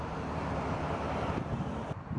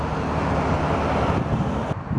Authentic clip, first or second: second